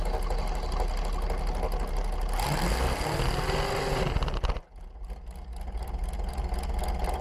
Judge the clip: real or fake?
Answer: real